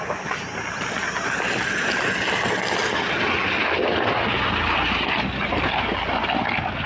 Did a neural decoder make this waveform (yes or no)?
no